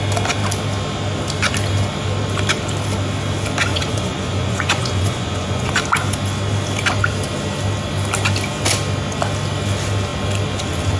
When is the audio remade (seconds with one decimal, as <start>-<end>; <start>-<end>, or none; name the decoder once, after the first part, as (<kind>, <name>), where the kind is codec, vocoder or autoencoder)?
3.7-5.7 (vocoder, Vocos)